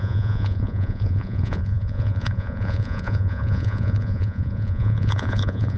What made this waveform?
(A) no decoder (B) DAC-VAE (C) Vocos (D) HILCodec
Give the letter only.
C